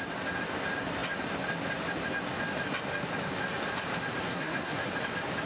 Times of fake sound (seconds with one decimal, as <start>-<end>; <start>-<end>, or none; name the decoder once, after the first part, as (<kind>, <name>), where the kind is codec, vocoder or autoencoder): 4.3-4.9 (codec, SNAC)